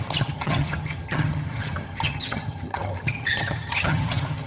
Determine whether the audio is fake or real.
fake